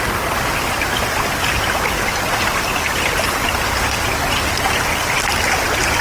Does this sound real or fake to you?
real